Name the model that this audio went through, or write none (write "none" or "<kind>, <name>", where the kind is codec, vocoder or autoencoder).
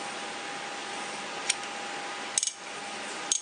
none